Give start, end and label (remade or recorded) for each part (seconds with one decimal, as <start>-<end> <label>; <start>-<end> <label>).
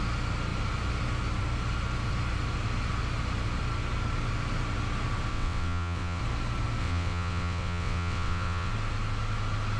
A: 0.0-5.3 recorded; 5.3-6.2 remade; 6.2-6.8 recorded; 6.8-8.7 remade; 8.7-9.8 recorded